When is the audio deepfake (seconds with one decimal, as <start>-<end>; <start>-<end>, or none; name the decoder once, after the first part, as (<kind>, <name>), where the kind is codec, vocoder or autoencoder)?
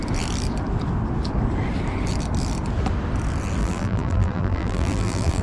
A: 3.6-5.4 (vocoder, BigVGAN v2)